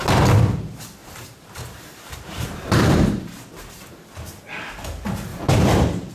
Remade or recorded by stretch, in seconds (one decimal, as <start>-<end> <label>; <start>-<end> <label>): 0.0-1.0 recorded; 1.0-3.2 remade; 3.2-5.3 recorded; 5.3-6.1 remade